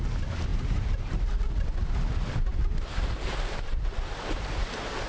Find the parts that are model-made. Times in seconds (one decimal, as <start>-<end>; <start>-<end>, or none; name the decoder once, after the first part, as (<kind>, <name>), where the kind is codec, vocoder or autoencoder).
0.5-1.4 (vocoder, BigVGAN v2); 2.5-4.0